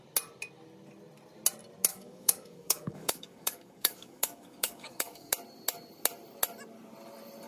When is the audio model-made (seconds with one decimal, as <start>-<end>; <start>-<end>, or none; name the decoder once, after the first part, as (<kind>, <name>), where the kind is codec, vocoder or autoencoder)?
1.9-5.3 (codec, DAC)